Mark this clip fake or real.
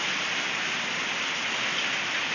real